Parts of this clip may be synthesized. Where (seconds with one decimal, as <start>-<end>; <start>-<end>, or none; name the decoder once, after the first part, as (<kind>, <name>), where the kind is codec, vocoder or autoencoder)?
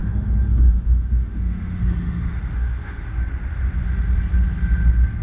0.0-3.1 (autoencoder, DAC-VAE)